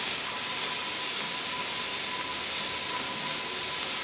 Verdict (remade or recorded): recorded